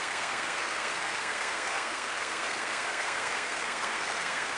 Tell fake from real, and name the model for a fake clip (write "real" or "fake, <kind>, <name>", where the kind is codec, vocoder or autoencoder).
fake, codec, SNAC